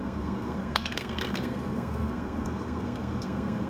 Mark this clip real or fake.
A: fake